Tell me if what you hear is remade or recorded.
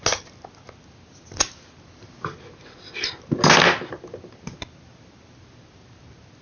recorded